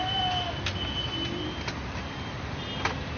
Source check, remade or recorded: recorded